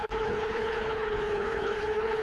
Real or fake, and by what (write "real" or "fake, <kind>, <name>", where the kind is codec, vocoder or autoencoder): fake, codec, HILCodec